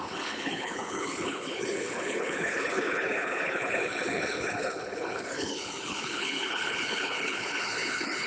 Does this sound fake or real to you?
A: fake